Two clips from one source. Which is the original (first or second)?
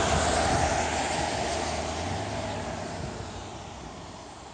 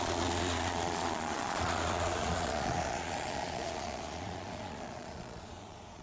first